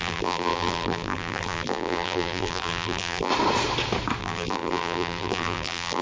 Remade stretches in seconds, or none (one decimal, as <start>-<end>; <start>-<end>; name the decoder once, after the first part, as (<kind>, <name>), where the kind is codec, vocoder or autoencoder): 0.0-3.3 (vocoder, BigVGAN v2); 4.2-6.0